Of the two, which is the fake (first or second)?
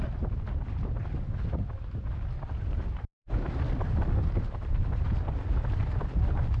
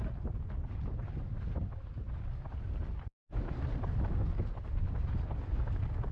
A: first